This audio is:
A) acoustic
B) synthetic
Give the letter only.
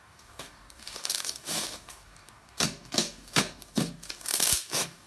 B